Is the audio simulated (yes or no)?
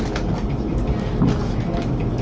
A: no